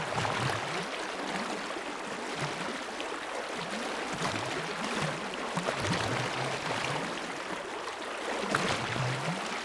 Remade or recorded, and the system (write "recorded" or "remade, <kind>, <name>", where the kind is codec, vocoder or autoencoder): recorded